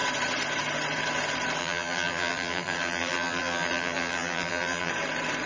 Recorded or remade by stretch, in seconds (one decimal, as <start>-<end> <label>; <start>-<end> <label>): 0.0-1.6 recorded; 1.6-4.9 remade; 4.9-5.5 recorded